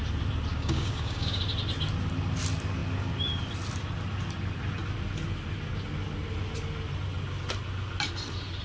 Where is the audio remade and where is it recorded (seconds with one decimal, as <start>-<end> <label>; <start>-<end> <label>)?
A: 0.0-0.5 recorded; 0.5-1.4 remade; 1.4-8.6 recorded